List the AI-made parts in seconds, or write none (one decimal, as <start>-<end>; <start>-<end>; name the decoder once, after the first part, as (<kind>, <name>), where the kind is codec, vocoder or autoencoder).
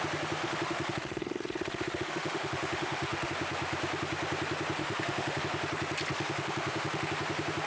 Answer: 0.4-3.3 (autoencoder, DAC-VAE); 4.8-5.4; 6.1-7.1